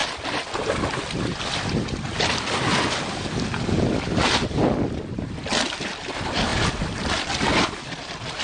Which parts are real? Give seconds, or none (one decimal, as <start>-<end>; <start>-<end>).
0.0-8.4